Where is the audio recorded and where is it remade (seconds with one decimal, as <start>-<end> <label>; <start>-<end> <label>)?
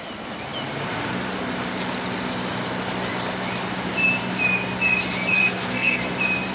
0.0-5.4 recorded; 5.4-6.0 remade; 6.0-6.5 recorded